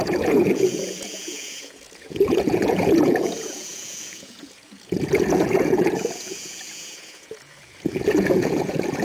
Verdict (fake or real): fake